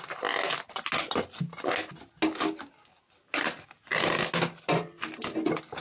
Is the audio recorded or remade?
recorded